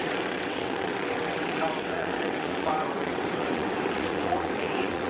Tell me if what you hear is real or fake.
fake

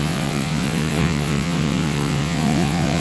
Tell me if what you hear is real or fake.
fake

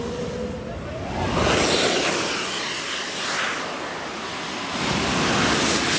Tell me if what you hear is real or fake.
real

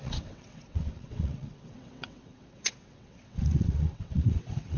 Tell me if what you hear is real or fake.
fake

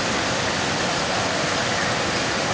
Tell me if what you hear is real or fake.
real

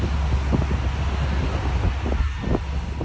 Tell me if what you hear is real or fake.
real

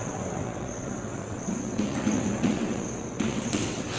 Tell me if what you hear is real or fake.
fake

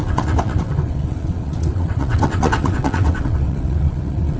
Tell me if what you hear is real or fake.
fake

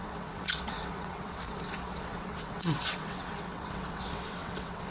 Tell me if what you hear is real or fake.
fake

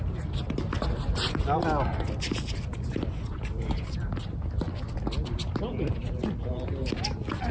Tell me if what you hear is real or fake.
real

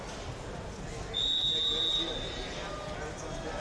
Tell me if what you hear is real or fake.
real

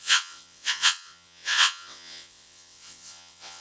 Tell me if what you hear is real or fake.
fake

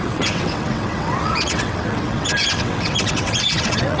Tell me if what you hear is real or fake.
fake